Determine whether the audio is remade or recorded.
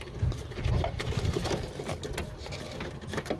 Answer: recorded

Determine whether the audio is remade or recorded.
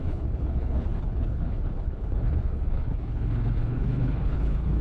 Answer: remade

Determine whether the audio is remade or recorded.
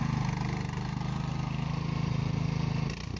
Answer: recorded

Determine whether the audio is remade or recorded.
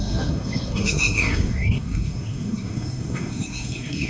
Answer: remade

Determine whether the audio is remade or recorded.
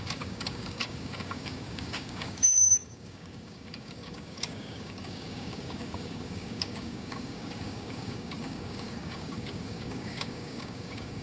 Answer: remade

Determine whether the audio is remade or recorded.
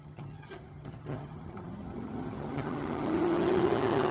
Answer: remade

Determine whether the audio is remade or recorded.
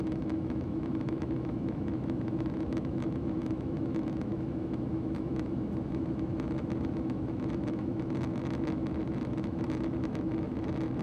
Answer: remade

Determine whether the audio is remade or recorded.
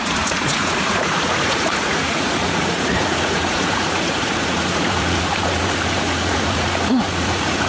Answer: remade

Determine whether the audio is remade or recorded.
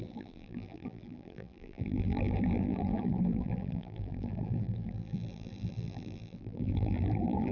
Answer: remade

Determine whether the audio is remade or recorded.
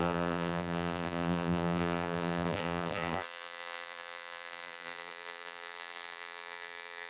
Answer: remade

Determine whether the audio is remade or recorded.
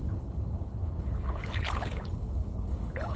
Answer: remade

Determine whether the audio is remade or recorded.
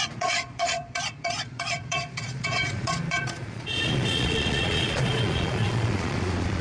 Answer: remade